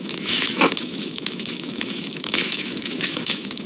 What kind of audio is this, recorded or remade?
remade